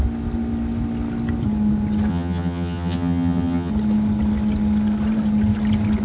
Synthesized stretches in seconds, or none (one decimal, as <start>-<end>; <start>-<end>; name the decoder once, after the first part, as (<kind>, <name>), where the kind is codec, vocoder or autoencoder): 2.1-3.7 (vocoder, HiFi-GAN)